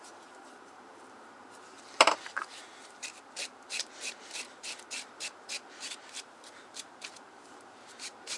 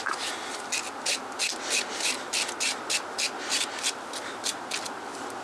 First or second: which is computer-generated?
first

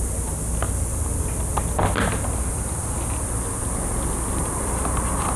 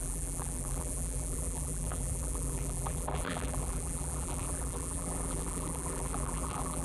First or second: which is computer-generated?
second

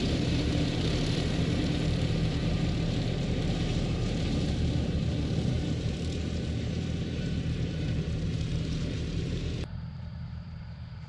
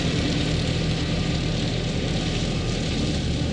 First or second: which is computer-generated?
first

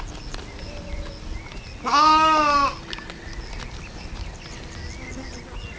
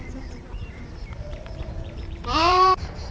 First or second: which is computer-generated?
second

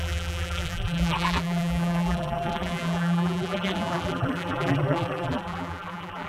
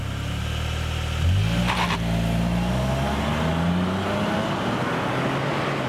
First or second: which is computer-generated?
first